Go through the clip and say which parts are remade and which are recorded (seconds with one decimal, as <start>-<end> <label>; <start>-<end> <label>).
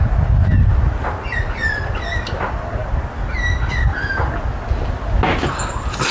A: 0.0-6.1 recorded